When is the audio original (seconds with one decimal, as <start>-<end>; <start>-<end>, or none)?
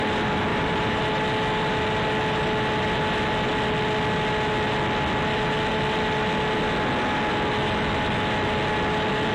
0.0-0.5; 1.0-9.3